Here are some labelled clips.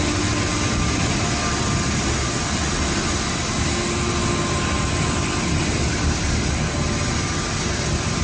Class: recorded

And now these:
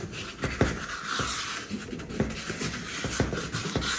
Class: recorded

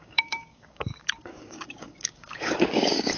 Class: remade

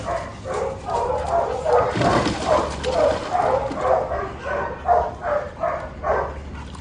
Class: recorded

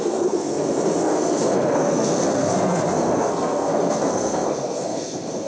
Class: remade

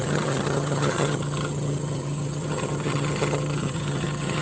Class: remade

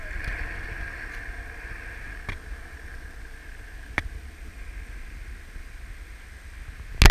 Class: recorded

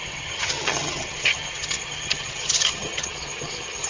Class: remade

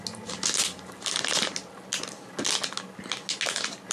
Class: recorded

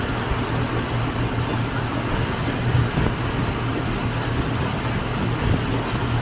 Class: recorded